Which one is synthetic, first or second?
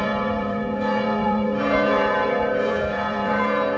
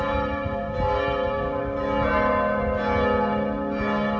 first